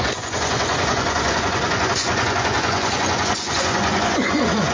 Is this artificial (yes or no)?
yes